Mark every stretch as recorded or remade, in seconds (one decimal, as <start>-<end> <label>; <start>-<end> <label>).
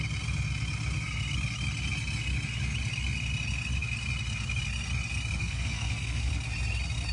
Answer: 0.0-5.4 recorded; 5.4-6.3 remade; 6.3-7.1 recorded